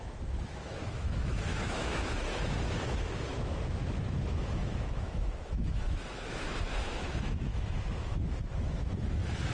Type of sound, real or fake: fake